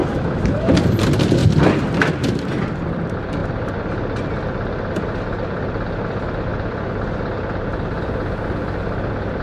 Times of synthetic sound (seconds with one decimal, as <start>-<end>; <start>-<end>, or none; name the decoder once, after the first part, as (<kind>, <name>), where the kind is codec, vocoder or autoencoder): 0.0-0.7 (autoencoder, DAC-VAE)